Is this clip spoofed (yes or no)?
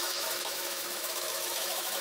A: yes